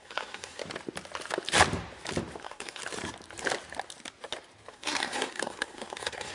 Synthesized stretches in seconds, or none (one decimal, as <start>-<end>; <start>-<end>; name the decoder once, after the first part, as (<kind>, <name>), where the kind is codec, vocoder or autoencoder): 0.0-0.6 (codec, SNAC); 2.4-2.8; 4.7-6.3